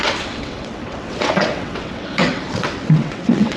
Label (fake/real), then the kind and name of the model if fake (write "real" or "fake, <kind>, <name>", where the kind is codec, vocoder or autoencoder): fake, vocoder, WaveNeXt